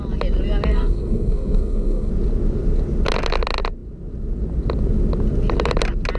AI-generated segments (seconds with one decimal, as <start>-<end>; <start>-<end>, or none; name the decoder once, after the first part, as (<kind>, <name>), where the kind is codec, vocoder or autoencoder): 0.7-2.1 (codec, SNAC)